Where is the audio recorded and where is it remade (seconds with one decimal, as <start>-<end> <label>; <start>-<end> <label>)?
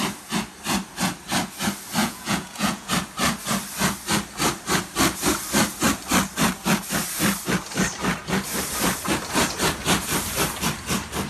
0.0-2.0 recorded; 2.0-2.9 remade; 2.9-11.3 recorded